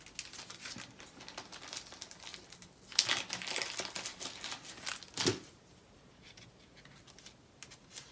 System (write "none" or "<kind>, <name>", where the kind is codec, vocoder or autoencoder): none